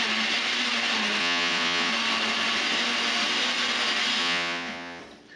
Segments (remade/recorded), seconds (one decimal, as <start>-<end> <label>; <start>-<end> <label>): 0.0-1.2 recorded; 1.2-1.9 remade; 1.9-4.2 recorded; 4.2-5.0 remade; 5.0-5.4 recorded